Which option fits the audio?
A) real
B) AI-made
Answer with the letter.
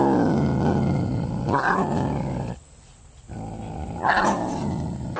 A